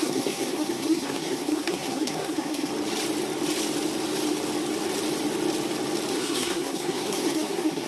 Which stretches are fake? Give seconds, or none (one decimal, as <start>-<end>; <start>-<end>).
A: 0.0-2.7; 6.1-7.9